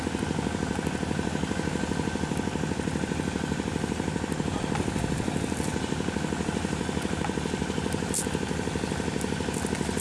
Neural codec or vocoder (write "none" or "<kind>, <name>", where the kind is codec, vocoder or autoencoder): none